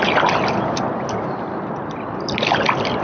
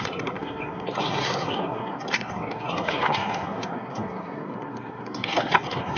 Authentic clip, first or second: first